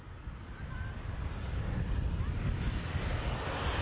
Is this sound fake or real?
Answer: real